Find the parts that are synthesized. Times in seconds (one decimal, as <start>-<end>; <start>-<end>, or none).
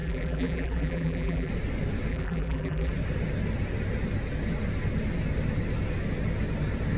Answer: 0.0-1.5; 2.1-2.9